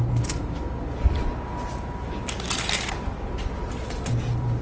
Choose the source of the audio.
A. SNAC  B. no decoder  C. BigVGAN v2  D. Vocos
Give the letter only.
B